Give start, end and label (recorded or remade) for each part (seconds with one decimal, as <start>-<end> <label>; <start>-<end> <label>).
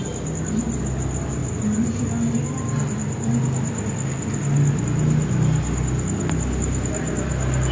0.0-7.7 recorded